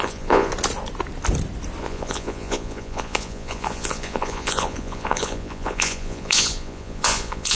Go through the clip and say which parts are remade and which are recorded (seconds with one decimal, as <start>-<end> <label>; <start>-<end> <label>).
0.0-0.5 remade; 0.5-1.8 recorded; 1.8-7.5 remade